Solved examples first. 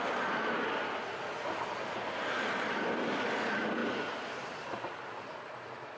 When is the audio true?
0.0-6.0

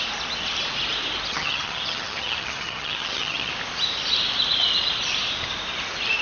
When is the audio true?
0.0-1.3; 3.5-6.2

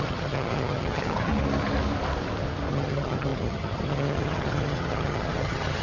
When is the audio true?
1.3-2.7

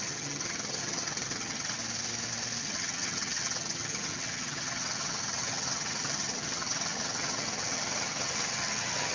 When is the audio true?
1.8-2.6

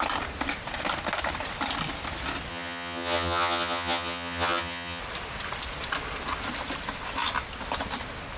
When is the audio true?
0.0-2.5; 5.0-8.4

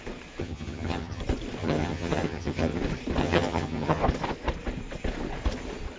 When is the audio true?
0.0-0.4; 1.2-1.6; 2.8-3.2; 4.0-6.0

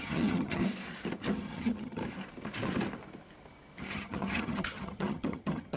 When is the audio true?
0.6-1.3; 2.0-3.8

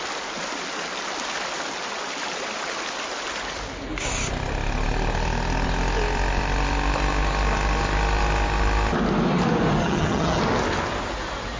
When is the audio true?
0.0-9.8; 10.4-11.6